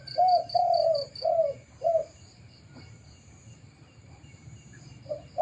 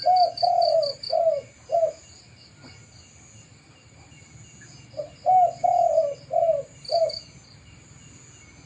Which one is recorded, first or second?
second